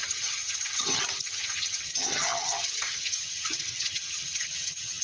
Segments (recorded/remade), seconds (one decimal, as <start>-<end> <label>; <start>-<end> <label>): 0.0-5.0 remade